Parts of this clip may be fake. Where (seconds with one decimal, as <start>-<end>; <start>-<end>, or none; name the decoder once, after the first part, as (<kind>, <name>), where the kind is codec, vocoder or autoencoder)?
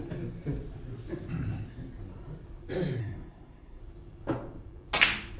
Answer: 3.0-3.8 (codec, SNAC)